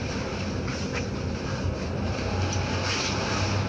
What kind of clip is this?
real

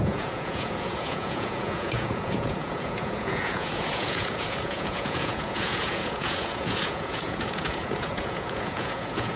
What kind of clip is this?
fake